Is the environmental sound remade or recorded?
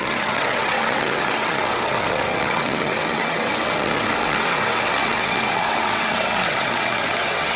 remade